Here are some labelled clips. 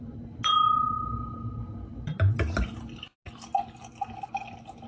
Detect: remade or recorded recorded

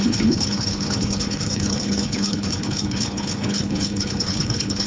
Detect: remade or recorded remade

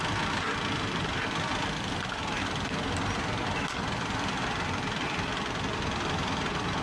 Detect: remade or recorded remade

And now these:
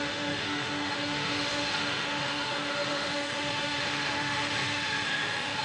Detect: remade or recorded remade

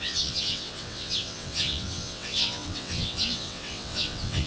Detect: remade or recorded remade